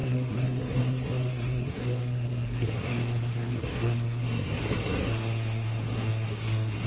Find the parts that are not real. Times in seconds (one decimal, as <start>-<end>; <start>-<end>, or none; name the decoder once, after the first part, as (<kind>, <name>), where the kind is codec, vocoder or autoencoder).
0.0-6.9 (codec, SNAC)